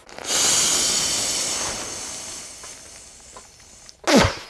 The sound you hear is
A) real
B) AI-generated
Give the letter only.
A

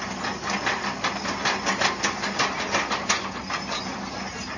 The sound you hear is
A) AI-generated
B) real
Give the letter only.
B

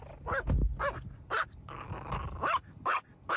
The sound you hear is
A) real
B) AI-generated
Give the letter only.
A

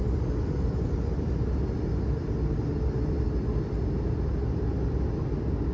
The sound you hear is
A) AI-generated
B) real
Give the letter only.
B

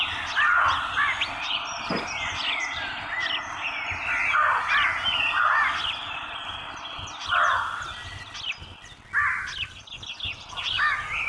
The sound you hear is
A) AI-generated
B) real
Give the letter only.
B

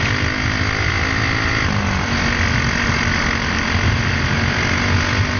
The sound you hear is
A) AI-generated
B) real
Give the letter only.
B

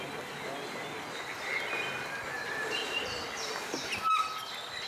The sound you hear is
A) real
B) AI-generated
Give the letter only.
A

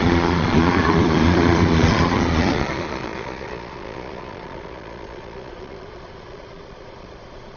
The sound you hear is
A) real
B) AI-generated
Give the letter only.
B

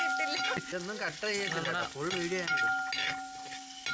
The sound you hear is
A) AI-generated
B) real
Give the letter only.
B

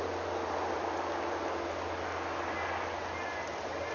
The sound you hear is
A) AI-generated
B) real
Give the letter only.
B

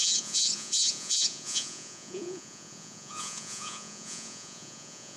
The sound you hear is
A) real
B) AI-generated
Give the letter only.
B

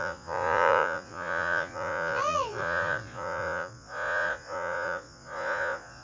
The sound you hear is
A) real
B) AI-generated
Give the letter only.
B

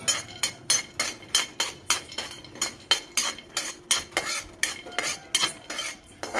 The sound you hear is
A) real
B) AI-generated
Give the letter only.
A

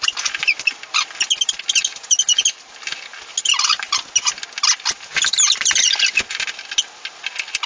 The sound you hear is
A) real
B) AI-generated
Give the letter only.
A